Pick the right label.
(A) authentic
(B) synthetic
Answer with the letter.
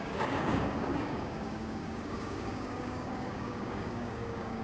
B